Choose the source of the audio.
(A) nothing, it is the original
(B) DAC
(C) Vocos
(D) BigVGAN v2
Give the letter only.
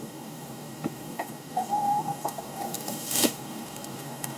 B